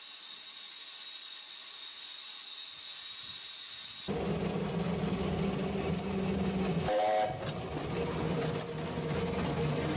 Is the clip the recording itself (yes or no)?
yes